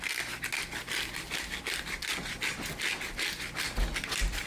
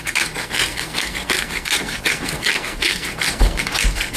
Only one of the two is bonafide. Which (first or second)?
first